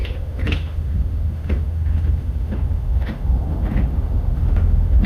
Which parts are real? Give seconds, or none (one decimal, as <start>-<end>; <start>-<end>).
none